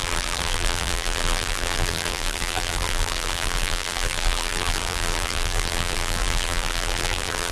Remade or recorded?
remade